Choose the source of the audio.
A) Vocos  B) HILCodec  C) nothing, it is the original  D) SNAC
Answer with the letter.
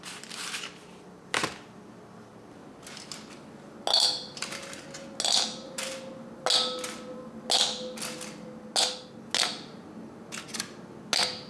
C